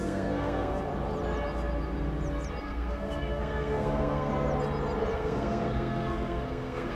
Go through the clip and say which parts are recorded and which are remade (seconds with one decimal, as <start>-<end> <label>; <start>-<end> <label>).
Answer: 0.0-0.9 remade; 0.9-2.6 recorded; 2.6-4.3 remade; 4.3-5.1 recorded; 5.1-6.9 remade

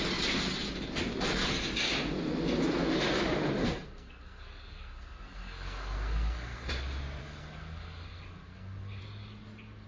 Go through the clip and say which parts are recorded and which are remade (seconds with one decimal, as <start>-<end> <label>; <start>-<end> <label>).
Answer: 0.0-3.6 recorded; 3.6-6.7 remade; 6.7-7.2 recorded; 7.2-9.0 remade; 9.0-9.9 recorded

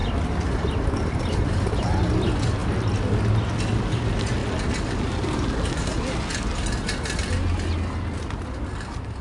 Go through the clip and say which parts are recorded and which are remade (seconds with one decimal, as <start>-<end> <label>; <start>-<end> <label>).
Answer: 0.0-9.2 recorded

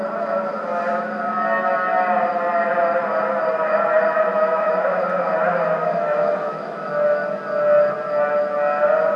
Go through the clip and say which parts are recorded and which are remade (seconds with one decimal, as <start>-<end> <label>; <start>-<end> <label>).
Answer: 0.0-4.3 recorded; 4.3-5.0 remade; 5.0-5.8 recorded; 5.8-6.9 remade; 6.9-9.2 recorded

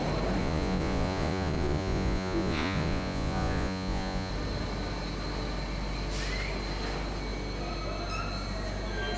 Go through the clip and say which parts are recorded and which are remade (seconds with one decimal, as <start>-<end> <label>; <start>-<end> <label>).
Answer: 0.0-0.4 recorded; 0.4-4.3 remade; 4.3-9.2 recorded

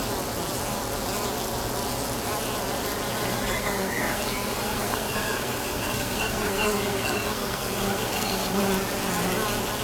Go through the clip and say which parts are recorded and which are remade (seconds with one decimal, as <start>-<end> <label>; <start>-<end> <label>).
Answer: 0.0-3.3 recorded; 3.3-8.6 remade; 8.6-9.8 recorded